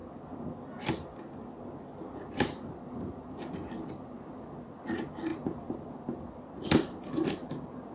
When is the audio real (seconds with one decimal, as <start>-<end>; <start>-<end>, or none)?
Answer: 0.0-2.9